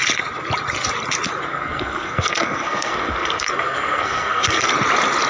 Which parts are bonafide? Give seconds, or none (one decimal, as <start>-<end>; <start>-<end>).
0.0-1.5; 4.7-5.3